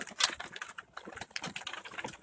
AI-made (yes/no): no